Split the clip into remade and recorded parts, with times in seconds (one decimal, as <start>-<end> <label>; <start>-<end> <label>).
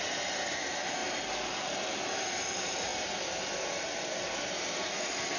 0.0-5.4 recorded